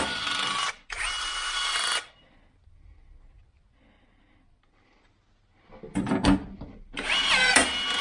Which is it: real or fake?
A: real